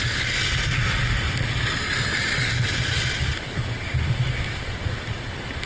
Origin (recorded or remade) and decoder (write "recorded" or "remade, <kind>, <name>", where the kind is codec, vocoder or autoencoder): recorded